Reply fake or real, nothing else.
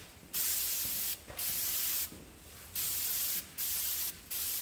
real